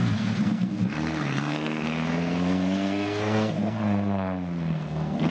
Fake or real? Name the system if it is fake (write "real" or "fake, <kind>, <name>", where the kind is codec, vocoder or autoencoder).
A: fake, codec, SNAC